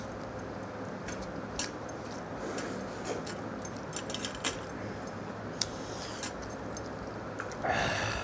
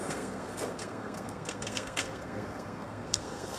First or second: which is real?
first